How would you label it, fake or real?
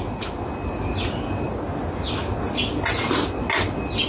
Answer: real